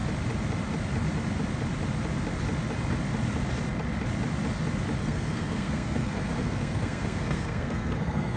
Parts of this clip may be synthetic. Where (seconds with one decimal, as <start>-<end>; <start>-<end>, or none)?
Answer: 5.0-8.4

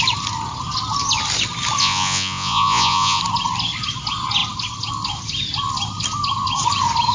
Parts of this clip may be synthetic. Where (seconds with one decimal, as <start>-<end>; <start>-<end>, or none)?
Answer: 1.8-3.2